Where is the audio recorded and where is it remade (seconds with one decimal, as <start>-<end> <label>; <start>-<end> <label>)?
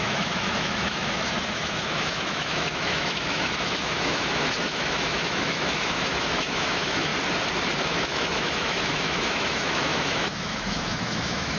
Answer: 0.0-7.1 remade; 7.1-7.8 recorded; 7.8-11.6 remade